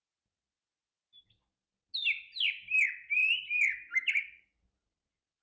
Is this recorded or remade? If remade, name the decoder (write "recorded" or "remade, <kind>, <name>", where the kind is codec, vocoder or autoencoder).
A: recorded